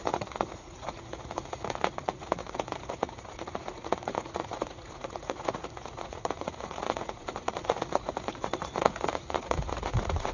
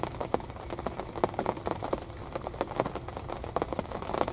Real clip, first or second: second